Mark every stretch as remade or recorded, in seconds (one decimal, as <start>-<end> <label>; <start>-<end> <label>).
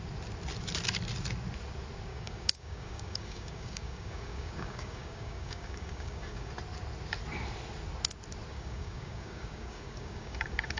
0.0-2.1 recorded; 2.1-6.5 remade; 6.5-8.5 recorded; 8.5-10.8 remade